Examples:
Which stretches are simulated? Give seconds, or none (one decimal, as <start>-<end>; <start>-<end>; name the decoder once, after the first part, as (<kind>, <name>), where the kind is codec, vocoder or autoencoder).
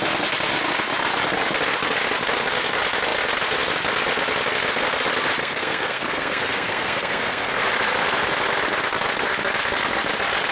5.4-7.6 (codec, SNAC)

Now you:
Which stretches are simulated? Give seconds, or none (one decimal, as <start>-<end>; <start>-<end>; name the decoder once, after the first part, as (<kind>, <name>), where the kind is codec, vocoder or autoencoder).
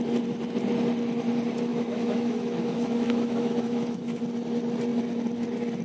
1.7-4.2 (autoencoder, DAC-VAE)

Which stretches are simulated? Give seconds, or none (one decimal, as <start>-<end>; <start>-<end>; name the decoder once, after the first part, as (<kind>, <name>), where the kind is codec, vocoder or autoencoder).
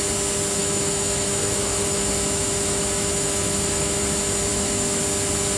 0.6-4.0 (autoencoder, DAC-VAE); 4.5-5.0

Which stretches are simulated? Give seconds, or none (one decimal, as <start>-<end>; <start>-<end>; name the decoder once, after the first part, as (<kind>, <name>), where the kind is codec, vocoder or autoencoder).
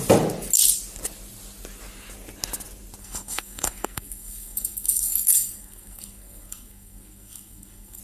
3.0-8.0 (codec, SNAC)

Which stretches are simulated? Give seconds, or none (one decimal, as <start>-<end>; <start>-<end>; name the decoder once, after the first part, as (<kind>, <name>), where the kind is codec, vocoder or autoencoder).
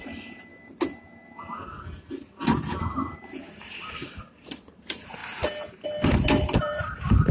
0.0-0.5 (vocoder, BigVGAN v2); 2.8-5.2; 6.6-7.3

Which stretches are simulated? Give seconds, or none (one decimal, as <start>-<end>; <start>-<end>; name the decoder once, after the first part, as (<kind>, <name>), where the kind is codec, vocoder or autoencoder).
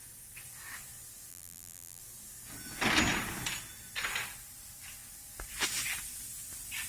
1.3-2.0 (vocoder, BigVGAN v2)